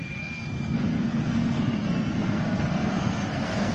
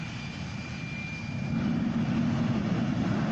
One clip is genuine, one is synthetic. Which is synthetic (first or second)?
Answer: first